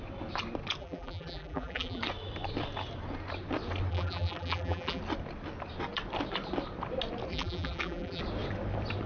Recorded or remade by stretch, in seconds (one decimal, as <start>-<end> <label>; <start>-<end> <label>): 0.0-0.8 recorded; 0.8-2.0 remade; 2.0-3.9 recorded; 3.9-5.0 remade; 5.0-7.3 recorded; 7.3-8.2 remade; 8.2-9.1 recorded